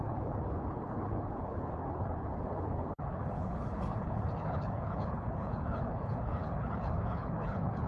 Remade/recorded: remade